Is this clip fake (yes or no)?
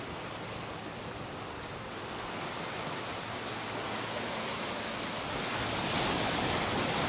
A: no